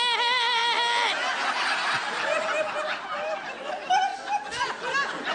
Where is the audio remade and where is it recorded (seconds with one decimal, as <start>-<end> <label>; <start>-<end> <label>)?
0.0-5.3 recorded